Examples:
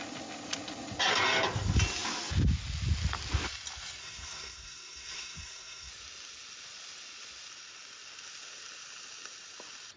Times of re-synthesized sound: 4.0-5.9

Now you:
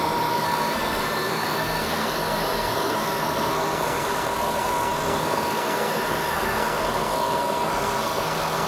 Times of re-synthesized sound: 0.0-8.7